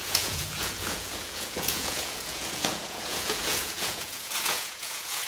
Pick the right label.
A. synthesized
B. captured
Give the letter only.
A